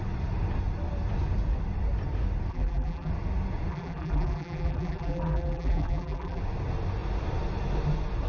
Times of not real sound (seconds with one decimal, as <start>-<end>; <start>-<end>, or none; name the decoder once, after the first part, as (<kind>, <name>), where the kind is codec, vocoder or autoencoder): 2.5-3.1 (vocoder, BigVGAN v2); 3.7-6.4